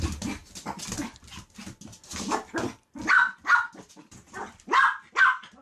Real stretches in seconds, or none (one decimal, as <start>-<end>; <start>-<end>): 0.4-3.8